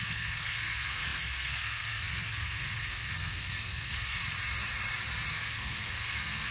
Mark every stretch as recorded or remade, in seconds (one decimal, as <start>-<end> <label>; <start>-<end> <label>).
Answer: 0.0-4.2 remade; 4.2-5.3 recorded; 5.3-6.5 remade